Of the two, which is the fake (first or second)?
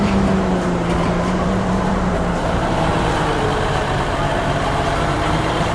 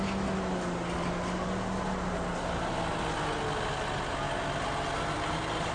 first